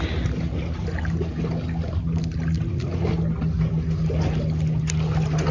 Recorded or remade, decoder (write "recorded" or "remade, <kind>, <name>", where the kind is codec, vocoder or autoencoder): recorded